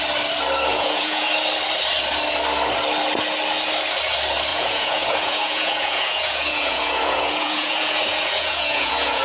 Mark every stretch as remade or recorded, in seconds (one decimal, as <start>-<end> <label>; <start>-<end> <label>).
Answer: 0.0-0.7 recorded; 0.7-1.3 remade; 1.3-4.5 recorded; 4.5-9.2 remade